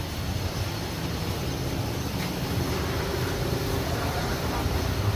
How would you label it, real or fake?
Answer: fake